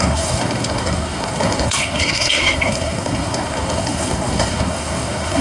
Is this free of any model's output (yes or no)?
no